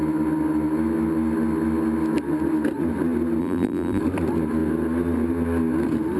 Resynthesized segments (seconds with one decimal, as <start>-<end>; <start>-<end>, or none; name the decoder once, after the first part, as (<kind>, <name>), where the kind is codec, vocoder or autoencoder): 3.4-4.0 (vocoder, BigVGAN v2)